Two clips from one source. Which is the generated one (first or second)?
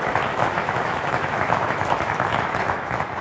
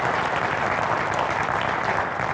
first